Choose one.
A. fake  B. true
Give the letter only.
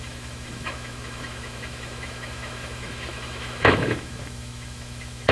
A